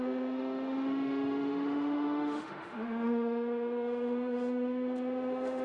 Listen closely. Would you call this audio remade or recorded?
remade